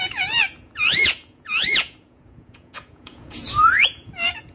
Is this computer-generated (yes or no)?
yes